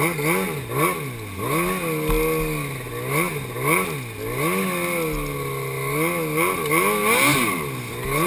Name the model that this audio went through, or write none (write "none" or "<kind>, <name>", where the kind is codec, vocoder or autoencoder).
none